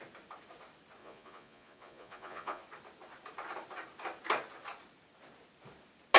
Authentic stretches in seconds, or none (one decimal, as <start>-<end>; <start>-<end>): 0.0-1.0; 2.6-6.2